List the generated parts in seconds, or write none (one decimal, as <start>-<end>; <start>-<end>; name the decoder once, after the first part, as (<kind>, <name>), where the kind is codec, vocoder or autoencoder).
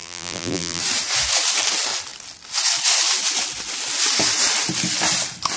0.0-0.8 (vocoder, BigVGAN v2)